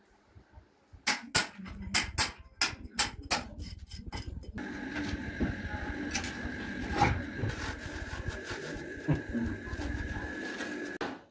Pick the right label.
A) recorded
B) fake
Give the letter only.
A